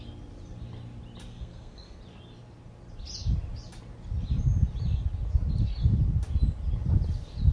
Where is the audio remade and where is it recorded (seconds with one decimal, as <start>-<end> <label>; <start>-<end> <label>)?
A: 0.0-1.3 recorded; 1.3-2.0 remade; 2.0-7.5 recorded